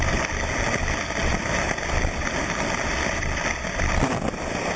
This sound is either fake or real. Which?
real